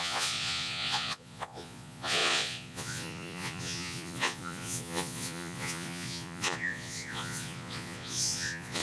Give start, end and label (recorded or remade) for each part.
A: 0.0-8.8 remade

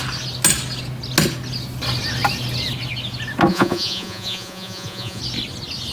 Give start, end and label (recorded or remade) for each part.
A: 0.0-3.5 recorded; 3.5-5.2 remade; 5.2-5.9 recorded

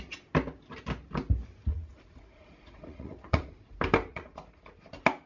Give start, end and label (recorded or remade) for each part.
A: 0.0-1.7 recorded; 1.7-3.5 remade; 3.5-4.1 recorded; 4.1-4.6 remade; 4.6-5.3 recorded

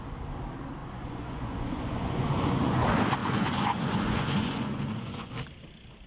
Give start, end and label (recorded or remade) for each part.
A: 0.0-0.8 recorded; 0.8-2.8 remade; 2.8-3.2 recorded; 3.2-5.3 remade; 5.3-6.1 recorded